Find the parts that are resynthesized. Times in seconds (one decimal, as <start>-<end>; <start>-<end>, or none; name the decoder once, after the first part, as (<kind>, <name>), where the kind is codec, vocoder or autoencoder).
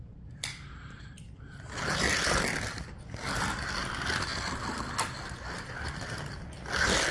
none